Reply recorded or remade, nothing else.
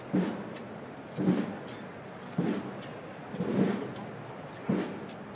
recorded